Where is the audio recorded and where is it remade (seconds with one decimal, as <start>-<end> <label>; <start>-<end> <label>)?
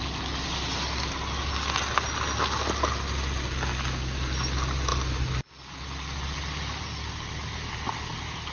0.0-8.5 recorded